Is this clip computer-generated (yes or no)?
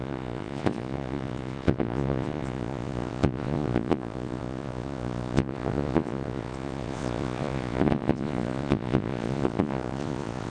yes